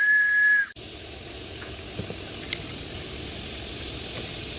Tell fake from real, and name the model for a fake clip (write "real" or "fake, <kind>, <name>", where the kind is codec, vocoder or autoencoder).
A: real